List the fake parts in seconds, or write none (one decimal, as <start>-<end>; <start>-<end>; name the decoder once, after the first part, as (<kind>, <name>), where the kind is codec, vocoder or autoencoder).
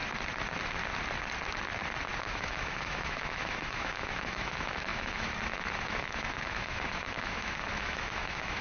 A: 2.2-8.6 (autoencoder, DAC-VAE)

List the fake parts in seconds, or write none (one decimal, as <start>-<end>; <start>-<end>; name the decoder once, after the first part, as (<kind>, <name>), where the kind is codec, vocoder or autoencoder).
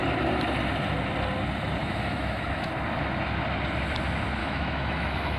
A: 1.8-2.7 (autoencoder, DAC-VAE); 4.4-5.4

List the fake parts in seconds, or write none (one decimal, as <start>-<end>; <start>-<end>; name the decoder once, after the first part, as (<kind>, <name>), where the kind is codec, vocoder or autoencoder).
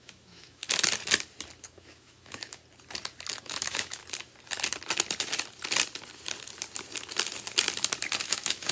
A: 0.0-0.6 (autoencoder, DAC-VAE); 1.6-2.6; 3.4-4.0; 8.2-8.7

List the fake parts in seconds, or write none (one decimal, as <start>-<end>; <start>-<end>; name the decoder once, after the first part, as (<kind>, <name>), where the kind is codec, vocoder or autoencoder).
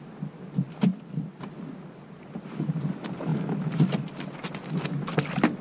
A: none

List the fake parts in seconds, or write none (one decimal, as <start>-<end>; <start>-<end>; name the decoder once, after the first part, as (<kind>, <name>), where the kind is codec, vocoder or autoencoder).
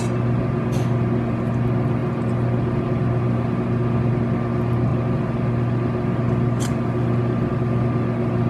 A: none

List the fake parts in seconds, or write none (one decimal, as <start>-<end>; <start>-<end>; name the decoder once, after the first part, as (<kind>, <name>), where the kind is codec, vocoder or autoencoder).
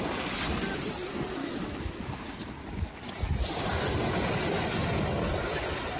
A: 1.4-2.0 (autoencoder, DAC-VAE)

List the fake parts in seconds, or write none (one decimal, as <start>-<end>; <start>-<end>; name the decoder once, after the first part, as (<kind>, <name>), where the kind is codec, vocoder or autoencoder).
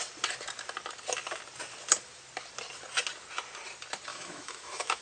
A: 4.1-5.0 (autoencoder, DAC-VAE)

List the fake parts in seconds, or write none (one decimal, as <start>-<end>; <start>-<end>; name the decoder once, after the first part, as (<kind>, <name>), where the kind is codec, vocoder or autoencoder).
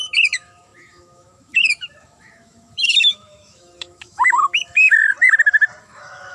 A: 0.0-5.0 (autoencoder, DAC-VAE); 5.8-6.3